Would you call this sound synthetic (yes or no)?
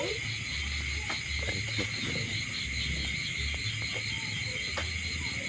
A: no